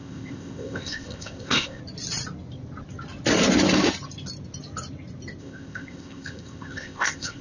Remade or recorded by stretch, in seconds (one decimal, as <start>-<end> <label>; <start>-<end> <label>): 0.0-1.8 remade; 1.8-5.4 recorded; 5.4-7.4 remade